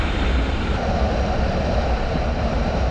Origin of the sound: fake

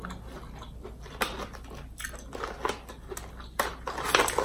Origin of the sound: real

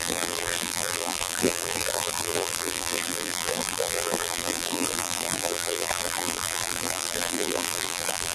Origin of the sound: fake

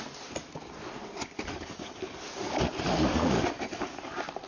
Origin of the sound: real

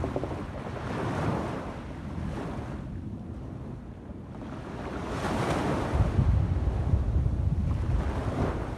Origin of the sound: real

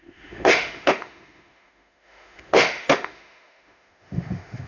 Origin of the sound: fake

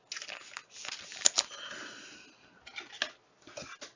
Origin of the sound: real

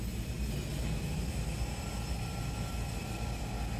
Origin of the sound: real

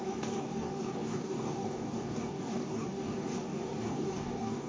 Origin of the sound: fake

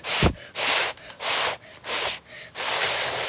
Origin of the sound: real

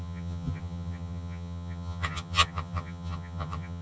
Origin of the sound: fake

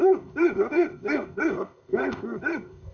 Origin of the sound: fake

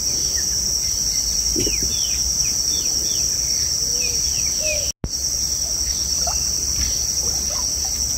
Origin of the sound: real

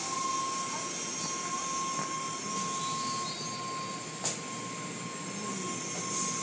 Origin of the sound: real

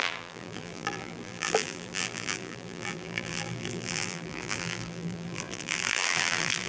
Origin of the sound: fake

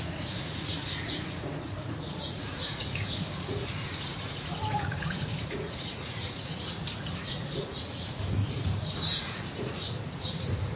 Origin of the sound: fake